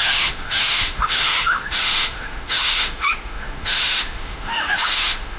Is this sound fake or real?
fake